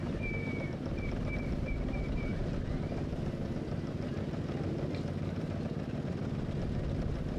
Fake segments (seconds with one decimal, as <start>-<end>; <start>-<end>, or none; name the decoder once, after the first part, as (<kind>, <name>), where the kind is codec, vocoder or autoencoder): none